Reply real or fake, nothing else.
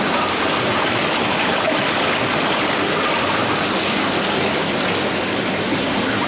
real